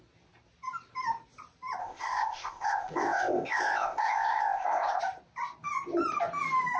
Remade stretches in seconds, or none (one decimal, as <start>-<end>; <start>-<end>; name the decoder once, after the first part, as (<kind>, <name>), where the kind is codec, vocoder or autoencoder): 1.8-5.0 (codec, ZipCodec)